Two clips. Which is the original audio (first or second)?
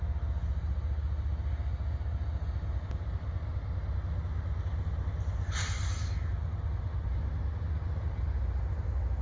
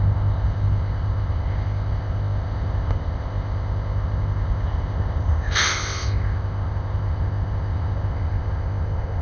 first